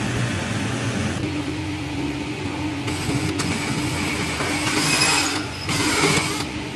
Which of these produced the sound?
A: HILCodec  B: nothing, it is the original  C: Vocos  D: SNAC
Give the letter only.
C